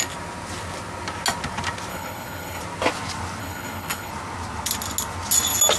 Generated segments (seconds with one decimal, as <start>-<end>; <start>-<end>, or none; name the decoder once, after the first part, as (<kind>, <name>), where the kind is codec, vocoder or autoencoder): 1.9-2.6 (codec, HILCodec); 3.4-4.1